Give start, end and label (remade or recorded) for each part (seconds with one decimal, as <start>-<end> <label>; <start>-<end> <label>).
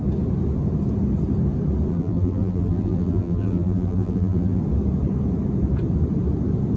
0.0-1.9 recorded; 1.9-4.6 remade; 4.6-6.8 recorded